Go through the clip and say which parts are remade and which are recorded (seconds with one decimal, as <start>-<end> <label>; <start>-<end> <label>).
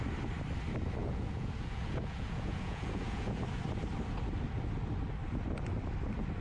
0.0-1.0 recorded; 1.0-3.4 remade; 3.4-6.4 recorded